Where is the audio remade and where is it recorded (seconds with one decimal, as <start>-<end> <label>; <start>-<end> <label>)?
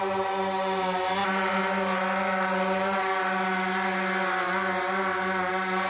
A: 0.0-5.9 recorded